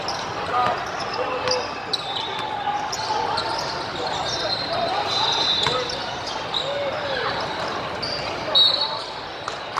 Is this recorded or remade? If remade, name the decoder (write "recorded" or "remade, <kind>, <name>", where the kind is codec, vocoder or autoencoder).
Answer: recorded